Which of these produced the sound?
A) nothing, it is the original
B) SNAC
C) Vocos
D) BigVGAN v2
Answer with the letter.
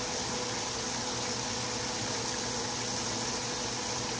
A